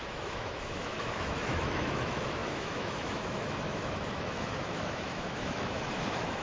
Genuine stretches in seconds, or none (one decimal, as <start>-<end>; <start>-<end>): none